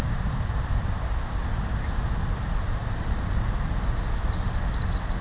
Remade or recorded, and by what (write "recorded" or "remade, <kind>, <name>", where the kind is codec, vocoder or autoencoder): recorded